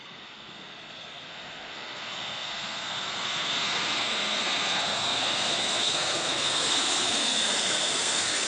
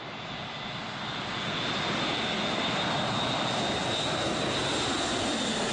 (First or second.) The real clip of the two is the second